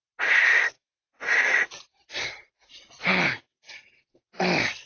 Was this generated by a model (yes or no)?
no